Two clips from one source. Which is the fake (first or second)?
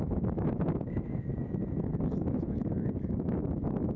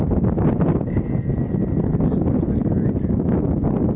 first